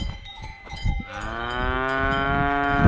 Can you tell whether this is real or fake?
fake